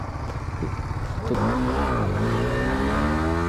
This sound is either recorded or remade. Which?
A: recorded